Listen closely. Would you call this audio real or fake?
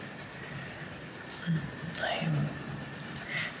real